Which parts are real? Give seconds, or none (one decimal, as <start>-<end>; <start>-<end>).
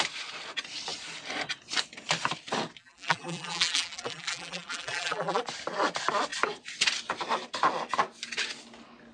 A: 0.0-2.8; 5.4-9.1